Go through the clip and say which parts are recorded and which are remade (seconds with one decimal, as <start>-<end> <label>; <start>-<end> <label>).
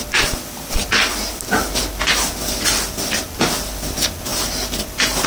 0.0-5.3 recorded